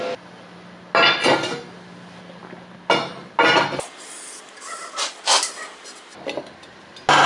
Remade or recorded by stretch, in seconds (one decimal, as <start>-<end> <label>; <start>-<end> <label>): 0.0-7.3 recorded